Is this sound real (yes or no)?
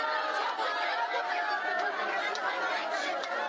yes